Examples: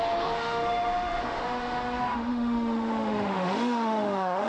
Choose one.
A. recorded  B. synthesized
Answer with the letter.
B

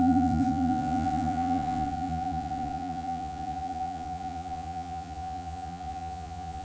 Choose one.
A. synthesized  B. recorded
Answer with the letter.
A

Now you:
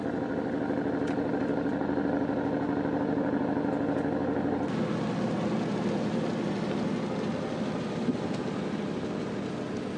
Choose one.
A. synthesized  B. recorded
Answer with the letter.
B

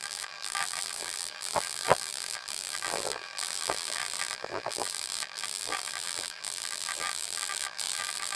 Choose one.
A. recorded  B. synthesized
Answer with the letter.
B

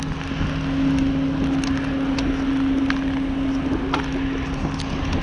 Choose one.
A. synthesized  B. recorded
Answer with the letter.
B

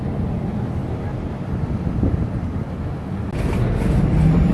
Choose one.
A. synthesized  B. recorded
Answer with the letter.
B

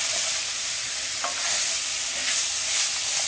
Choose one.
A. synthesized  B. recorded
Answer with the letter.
B